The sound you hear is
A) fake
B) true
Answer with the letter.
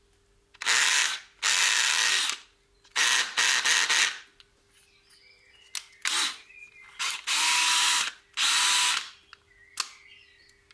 B